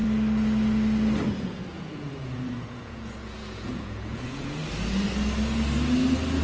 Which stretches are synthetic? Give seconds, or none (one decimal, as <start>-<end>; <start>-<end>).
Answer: 1.3-4.6